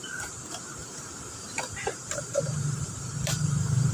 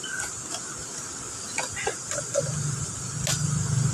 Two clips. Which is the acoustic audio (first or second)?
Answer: second